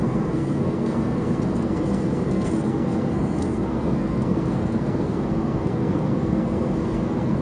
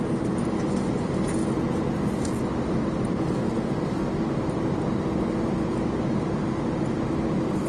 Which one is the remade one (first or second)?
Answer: first